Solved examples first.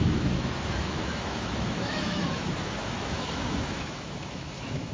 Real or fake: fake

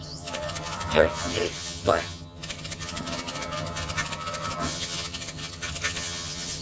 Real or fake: fake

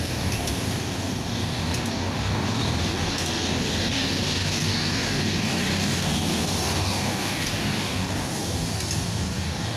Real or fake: fake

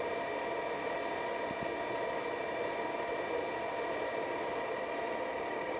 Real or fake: real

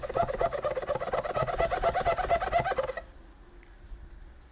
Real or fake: real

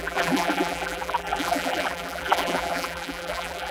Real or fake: fake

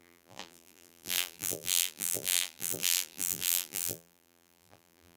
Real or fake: fake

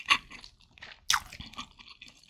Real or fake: real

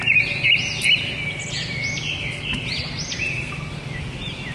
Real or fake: real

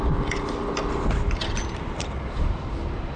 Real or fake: real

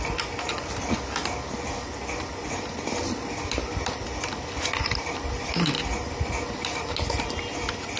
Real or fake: real